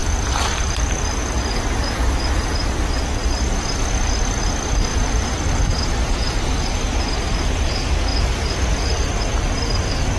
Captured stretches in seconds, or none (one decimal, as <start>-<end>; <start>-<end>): 0.0-4.9; 7.0-10.2